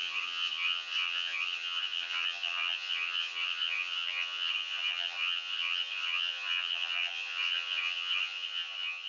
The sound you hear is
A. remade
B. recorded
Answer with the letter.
A